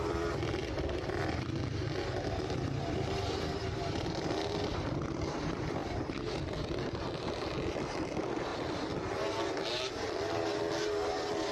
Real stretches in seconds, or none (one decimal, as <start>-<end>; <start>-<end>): 0.0-11.5